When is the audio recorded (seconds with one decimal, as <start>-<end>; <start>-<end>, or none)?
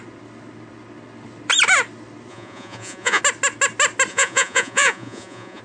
0.0-2.3; 3.2-4.1